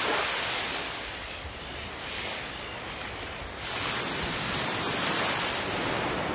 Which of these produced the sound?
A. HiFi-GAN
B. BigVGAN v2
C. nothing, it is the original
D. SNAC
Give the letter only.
C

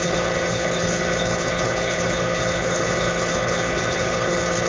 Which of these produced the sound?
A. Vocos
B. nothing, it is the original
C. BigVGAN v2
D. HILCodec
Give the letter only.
D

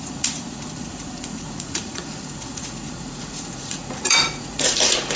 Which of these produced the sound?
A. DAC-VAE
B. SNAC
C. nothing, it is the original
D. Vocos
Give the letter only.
D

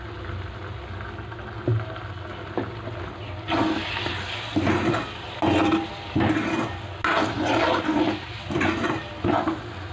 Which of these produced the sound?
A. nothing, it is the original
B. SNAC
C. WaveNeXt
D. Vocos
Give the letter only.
A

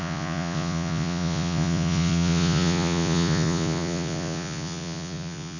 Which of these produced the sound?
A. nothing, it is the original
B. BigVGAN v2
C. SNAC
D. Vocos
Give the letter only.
D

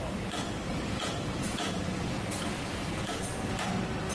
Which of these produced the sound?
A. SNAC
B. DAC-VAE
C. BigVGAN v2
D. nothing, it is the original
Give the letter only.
C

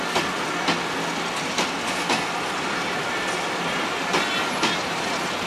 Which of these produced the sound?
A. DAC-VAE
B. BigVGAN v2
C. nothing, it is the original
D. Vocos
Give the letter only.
C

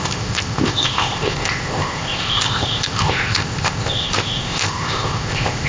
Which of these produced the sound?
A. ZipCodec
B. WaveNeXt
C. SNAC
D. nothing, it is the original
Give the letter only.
A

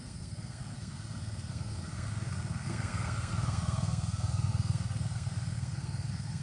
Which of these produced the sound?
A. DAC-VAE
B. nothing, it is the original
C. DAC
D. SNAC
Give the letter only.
D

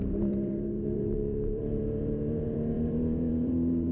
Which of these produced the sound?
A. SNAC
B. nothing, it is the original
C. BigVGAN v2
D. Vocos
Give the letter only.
C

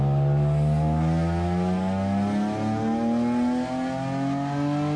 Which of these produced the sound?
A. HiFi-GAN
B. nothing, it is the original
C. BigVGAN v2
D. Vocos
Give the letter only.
B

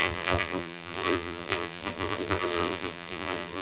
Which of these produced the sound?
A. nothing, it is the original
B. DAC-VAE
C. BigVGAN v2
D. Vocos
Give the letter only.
C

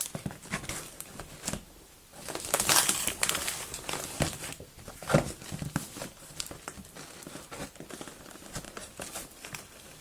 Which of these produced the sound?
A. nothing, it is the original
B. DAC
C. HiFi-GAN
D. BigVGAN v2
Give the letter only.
A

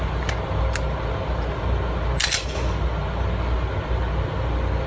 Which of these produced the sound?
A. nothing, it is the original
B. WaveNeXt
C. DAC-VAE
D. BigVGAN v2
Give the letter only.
A